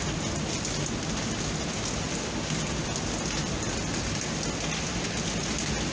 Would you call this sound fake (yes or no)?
no